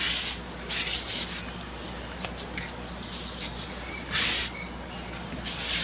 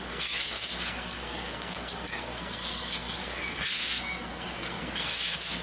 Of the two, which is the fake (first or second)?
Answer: second